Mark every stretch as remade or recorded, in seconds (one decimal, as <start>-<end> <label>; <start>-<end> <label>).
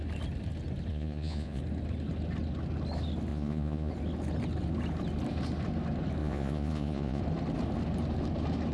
0.0-0.9 recorded; 0.9-1.6 remade; 1.6-3.3 recorded; 3.3-3.9 remade; 3.9-6.2 recorded; 6.2-7.2 remade; 7.2-8.7 recorded